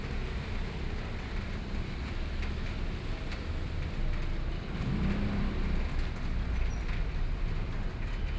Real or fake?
real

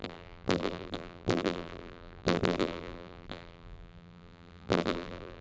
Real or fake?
fake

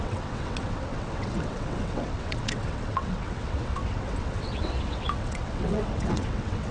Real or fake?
fake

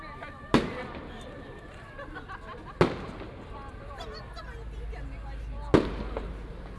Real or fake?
real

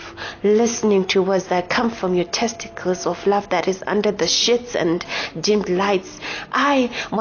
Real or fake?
real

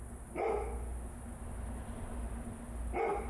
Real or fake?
real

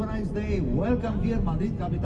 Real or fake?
real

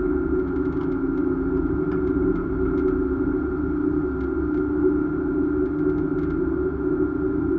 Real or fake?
real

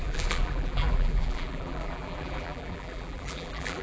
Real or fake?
fake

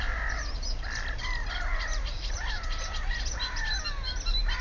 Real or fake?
real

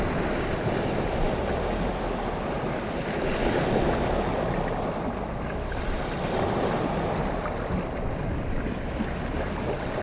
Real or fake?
real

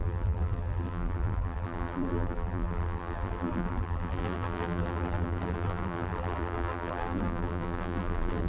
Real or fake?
fake